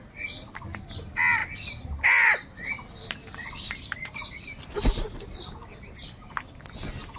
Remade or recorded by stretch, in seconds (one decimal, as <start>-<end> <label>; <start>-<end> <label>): 0.0-7.2 recorded